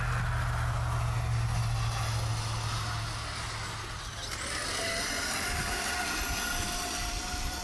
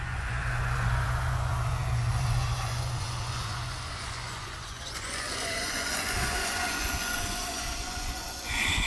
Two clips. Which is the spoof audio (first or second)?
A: second